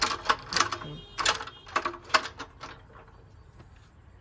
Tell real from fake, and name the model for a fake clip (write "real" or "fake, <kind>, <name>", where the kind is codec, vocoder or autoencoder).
real